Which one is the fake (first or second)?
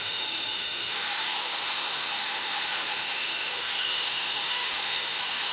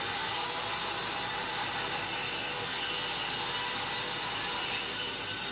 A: first